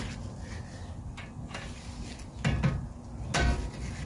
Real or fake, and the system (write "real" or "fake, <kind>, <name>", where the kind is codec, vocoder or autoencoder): real